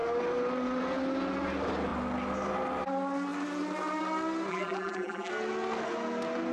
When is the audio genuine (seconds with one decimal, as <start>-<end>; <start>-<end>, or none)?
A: 0.0-4.5; 5.3-6.5